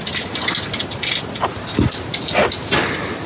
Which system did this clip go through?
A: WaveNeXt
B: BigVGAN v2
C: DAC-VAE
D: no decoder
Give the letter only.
D